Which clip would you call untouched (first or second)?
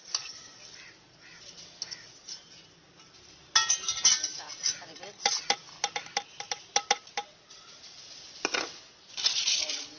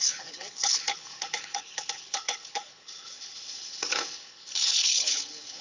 first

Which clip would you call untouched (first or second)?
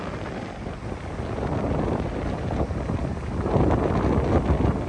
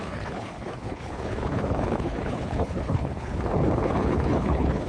first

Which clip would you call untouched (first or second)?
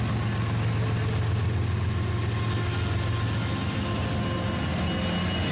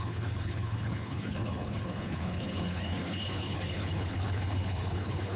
first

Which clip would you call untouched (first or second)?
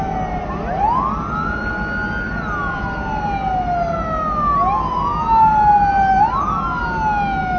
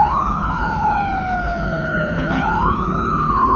first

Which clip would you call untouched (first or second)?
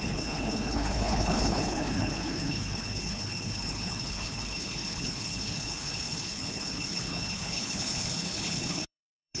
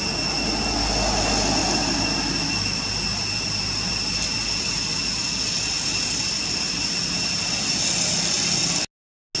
second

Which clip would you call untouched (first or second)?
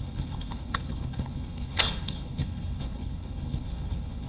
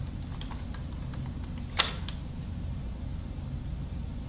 second